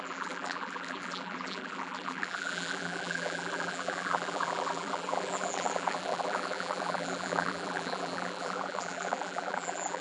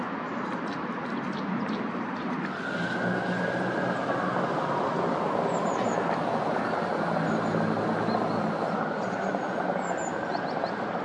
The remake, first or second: first